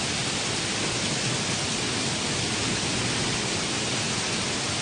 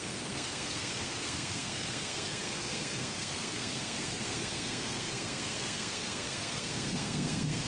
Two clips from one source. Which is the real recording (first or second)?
first